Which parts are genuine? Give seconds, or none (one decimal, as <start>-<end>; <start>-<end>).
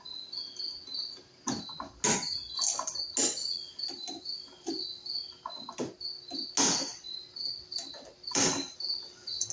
0.0-3.4; 5.4-6.9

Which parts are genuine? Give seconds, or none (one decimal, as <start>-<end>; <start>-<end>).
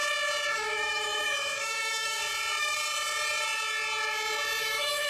0.0-0.5; 2.2-4.6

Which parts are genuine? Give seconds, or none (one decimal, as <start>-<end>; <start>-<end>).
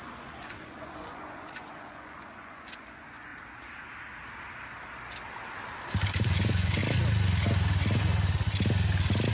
3.3-6.1; 6.8-9.3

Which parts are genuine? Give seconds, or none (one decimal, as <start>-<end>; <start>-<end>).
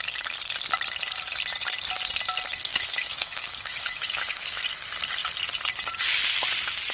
0.0-2.7; 4.6-6.9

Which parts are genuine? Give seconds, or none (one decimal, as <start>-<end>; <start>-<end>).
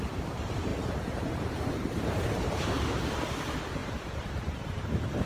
0.0-0.7; 3.4-3.8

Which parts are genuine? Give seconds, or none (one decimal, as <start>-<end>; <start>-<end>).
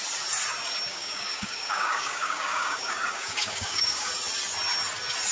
0.0-0.9; 4.1-5.3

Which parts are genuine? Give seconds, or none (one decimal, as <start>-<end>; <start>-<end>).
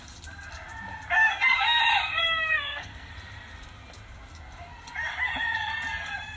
0.0-1.2; 1.8-2.5; 3.1-6.4